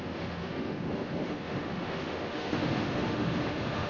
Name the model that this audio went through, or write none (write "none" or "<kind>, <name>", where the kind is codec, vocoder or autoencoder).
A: autoencoder, DAC-VAE